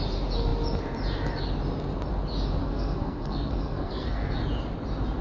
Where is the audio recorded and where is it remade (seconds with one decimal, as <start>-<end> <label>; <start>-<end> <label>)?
0.0-2.6 recorded; 2.6-4.4 remade; 4.4-5.2 recorded